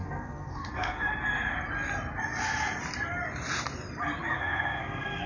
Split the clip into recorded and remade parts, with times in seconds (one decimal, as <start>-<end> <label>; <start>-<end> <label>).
0.0-1.1 remade; 1.1-4.3 recorded; 4.3-5.3 remade